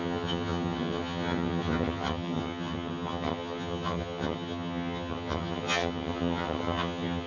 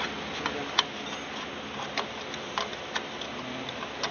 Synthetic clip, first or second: first